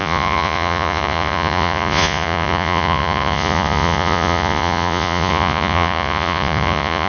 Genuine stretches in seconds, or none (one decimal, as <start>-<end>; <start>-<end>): none